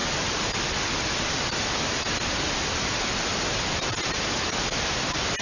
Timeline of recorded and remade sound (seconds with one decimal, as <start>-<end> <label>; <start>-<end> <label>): 0.0-5.4 recorded